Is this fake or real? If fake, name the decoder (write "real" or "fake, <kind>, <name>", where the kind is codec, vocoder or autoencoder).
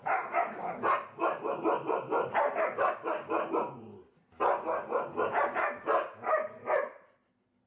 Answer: real